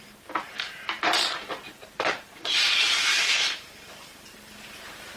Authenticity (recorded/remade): remade